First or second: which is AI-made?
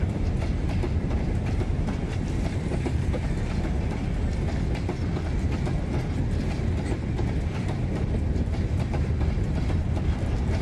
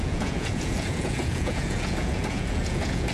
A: second